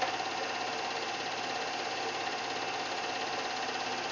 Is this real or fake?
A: real